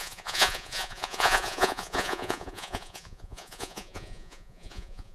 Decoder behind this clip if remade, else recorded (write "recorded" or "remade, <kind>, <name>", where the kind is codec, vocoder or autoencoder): remade, vocoder, Vocos